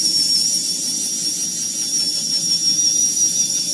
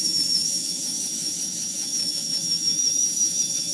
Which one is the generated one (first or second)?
second